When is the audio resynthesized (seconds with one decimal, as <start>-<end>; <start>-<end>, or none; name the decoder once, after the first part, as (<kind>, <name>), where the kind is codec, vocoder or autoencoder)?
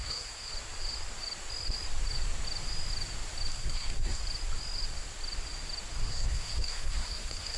0.0-0.5 (codec, SNAC); 3.5-4.2; 6.1-7.6